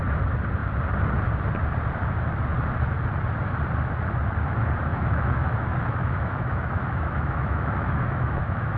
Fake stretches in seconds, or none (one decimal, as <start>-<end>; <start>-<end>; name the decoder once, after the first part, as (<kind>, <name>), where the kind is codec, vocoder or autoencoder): 4.9-8.8 (autoencoder, DAC-VAE)